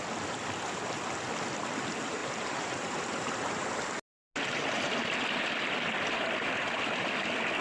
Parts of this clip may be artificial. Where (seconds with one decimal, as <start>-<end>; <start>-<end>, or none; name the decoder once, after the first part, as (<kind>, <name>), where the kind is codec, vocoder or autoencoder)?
2.2-3.7 (vocoder, BigVGAN v2)